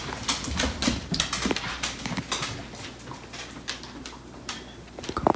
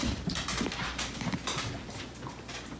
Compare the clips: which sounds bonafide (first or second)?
first